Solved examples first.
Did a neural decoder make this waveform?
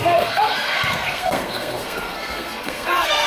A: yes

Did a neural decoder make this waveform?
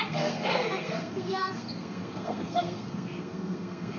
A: yes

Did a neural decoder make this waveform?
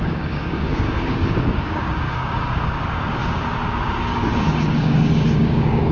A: yes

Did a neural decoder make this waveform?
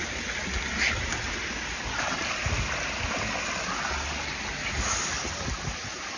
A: no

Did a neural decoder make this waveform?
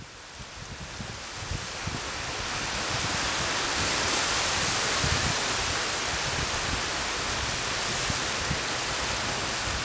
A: no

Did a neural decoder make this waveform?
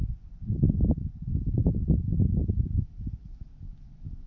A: no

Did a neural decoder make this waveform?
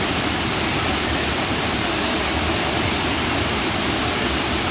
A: no